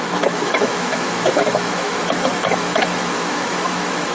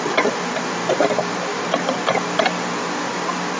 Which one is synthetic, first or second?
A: first